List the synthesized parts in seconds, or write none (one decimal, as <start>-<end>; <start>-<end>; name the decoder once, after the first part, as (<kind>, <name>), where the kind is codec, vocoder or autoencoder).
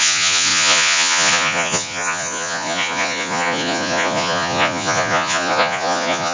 0.0-6.3 (vocoder, Vocos)